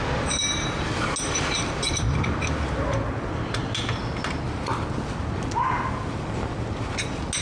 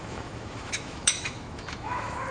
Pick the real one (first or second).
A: first